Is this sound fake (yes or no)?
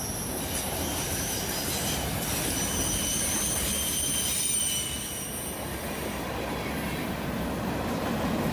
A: no